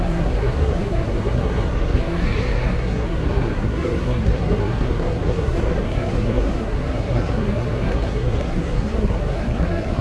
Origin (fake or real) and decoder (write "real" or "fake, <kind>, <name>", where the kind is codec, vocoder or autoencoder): fake, codec, SNAC